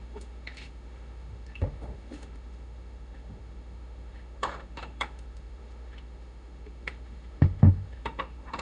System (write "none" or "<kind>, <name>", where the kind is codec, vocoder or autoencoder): autoencoder, DAC-VAE